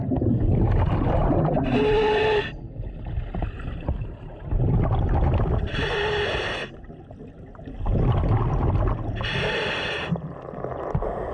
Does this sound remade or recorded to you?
recorded